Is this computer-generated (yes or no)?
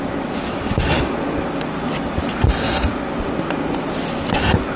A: no